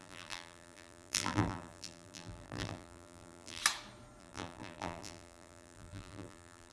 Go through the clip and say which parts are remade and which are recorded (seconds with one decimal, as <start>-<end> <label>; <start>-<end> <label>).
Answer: 0.0-3.6 remade; 3.6-4.2 recorded; 4.2-6.7 remade